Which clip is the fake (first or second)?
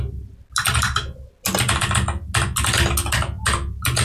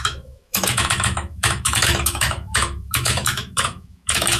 second